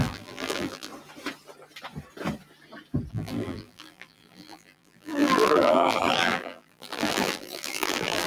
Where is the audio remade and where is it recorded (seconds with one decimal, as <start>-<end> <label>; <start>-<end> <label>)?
0.0-0.9 remade; 0.9-3.1 recorded; 3.1-8.3 remade